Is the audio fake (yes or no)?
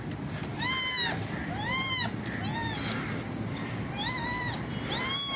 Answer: no